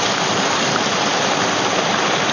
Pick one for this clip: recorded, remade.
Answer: recorded